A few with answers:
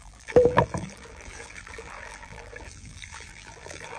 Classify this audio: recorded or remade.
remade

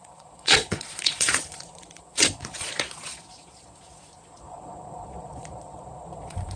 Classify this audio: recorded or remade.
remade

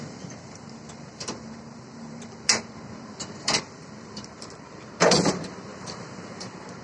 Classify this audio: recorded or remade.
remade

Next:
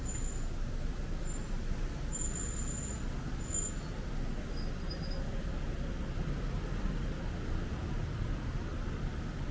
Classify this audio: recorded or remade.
recorded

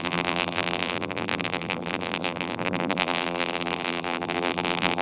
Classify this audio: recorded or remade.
remade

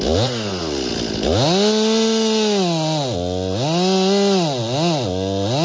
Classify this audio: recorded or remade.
recorded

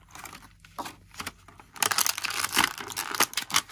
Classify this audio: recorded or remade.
recorded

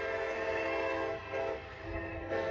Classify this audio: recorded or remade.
remade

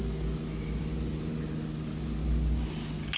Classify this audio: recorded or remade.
recorded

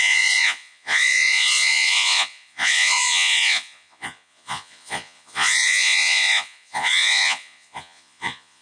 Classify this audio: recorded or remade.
remade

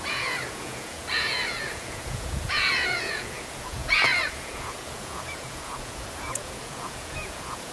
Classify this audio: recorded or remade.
remade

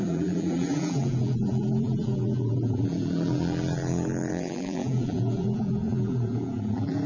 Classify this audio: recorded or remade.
remade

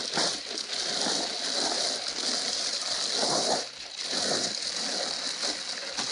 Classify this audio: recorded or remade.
recorded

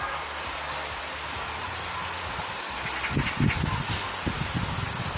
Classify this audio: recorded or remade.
recorded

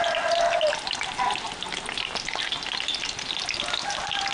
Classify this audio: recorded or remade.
recorded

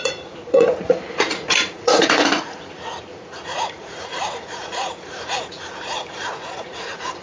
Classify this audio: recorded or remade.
remade